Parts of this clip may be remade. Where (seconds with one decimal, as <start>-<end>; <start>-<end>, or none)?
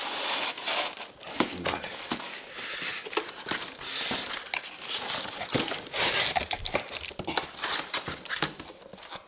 none